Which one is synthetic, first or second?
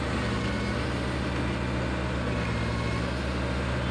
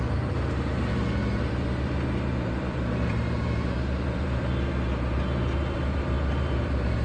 second